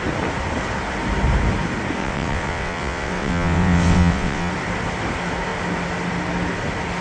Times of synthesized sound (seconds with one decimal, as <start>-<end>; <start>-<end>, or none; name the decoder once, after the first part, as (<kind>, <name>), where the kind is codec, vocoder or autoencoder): 2.0-4.5 (vocoder, WaveNeXt)